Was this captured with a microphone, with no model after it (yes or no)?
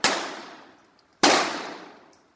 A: no